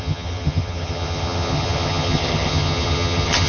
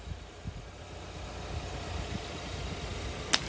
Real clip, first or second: second